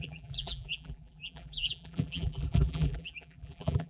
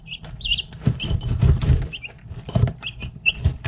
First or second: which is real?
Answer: second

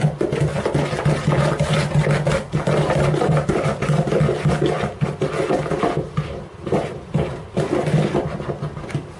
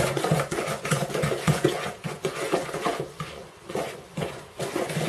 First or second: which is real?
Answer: first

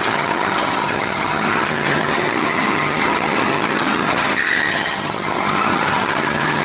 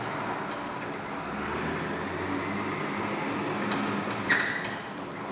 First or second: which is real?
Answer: second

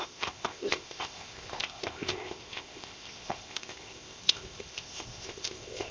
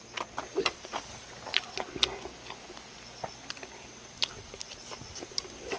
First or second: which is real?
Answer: second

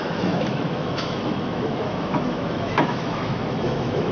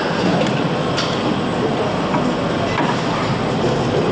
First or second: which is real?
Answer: second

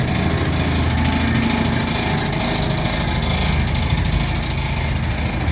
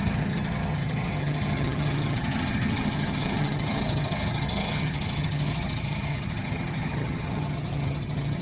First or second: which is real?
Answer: first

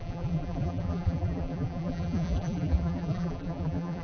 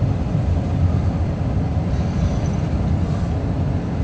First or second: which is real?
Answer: second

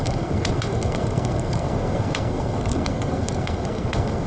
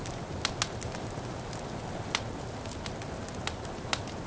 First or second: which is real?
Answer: second